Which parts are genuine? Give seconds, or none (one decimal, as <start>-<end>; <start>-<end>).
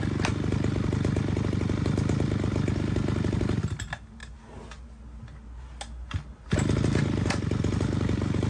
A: 0.0-8.5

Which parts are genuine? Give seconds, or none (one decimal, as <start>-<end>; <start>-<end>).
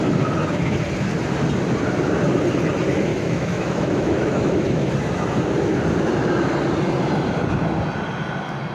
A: 0.0-3.1; 4.9-8.7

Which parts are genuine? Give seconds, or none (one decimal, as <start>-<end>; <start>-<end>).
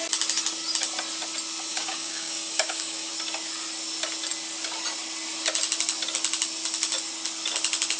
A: 0.0-1.7; 3.1-8.0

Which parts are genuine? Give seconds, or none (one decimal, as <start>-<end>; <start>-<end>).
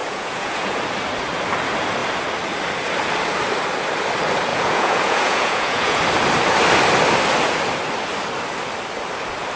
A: 0.8-4.5; 6.0-9.6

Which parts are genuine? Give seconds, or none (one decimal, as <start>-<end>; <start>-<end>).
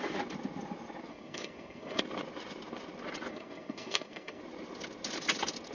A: 0.0-1.1; 2.0-3.3; 4.4-5.7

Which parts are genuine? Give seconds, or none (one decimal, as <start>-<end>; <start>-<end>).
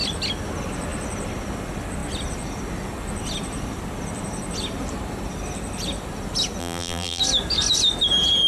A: 0.0-6.6; 7.2-8.5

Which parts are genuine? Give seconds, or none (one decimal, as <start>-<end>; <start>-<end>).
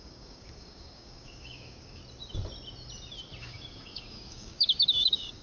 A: 2.0-3.4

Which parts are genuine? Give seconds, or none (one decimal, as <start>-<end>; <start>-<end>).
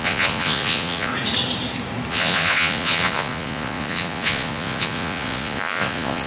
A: 1.1-2.1